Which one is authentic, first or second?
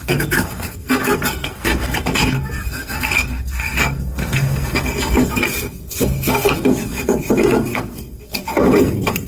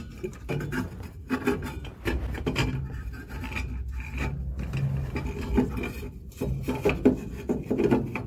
second